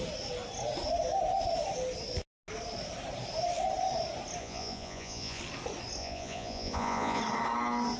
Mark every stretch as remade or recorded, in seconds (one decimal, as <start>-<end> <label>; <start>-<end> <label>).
0.0-4.4 recorded; 4.4-5.4 remade; 5.4-6.0 recorded; 6.0-7.2 remade; 7.2-8.0 recorded